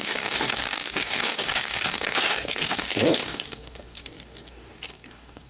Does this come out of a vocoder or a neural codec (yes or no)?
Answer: yes